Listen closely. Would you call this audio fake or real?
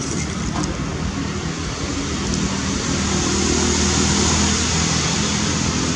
real